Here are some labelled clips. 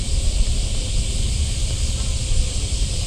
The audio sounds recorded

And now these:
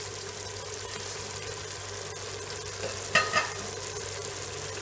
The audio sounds recorded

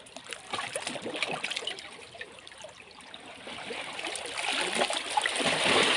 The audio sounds remade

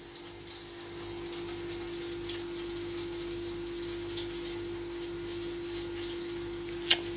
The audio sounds recorded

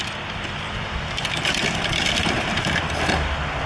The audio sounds recorded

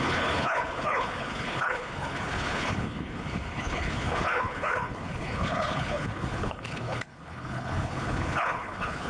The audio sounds remade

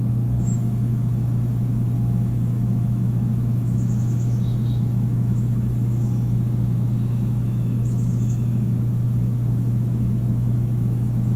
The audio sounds remade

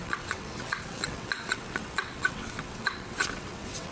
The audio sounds remade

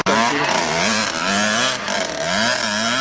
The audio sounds recorded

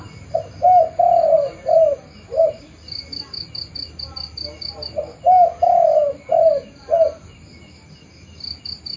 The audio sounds recorded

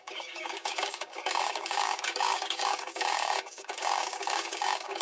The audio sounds remade